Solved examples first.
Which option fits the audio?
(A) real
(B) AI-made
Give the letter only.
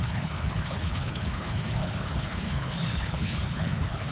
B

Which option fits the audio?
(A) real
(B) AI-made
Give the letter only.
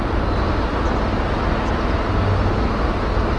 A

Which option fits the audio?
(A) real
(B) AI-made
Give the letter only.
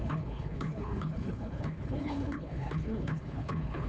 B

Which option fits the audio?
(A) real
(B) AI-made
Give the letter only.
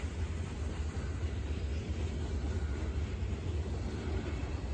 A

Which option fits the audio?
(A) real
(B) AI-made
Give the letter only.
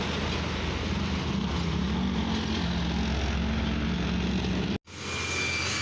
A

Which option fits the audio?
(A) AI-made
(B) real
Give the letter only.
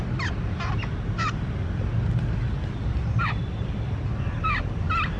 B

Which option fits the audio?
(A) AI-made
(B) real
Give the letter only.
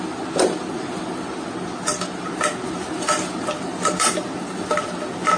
B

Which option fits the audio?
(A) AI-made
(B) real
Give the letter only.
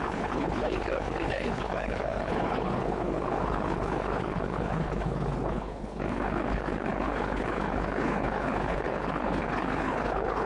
A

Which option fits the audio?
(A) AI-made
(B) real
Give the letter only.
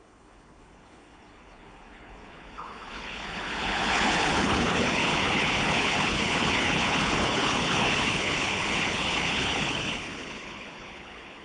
A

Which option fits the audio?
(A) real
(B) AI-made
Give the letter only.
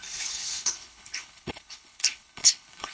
B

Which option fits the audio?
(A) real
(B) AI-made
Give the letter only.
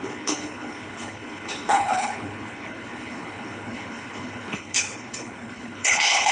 B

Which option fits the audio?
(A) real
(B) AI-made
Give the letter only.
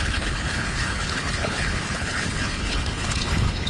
B